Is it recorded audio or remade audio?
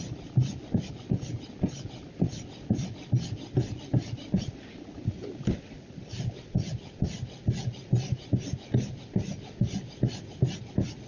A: recorded